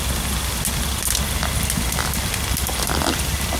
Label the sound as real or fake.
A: real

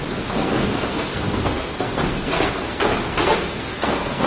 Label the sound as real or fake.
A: fake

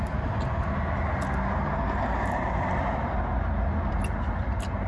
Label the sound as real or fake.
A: real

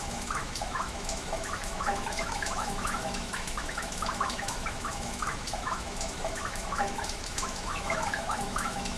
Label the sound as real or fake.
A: fake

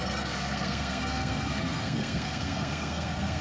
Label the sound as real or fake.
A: fake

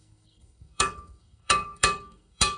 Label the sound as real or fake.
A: fake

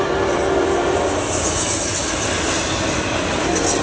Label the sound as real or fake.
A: real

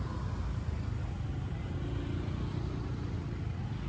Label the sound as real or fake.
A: real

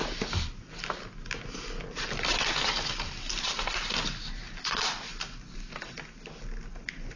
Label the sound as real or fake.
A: real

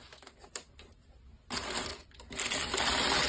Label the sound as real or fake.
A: real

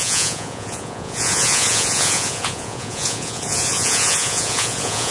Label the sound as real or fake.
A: fake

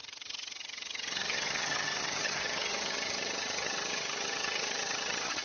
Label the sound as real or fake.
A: fake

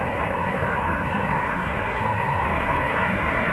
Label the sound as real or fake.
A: fake